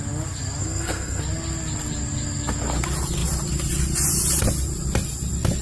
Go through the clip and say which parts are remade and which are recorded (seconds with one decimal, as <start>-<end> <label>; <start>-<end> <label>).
0.0-0.6 recorded; 0.6-1.2 remade; 1.2-5.6 recorded